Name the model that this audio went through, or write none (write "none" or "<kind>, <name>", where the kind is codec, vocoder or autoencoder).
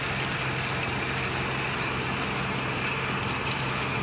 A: none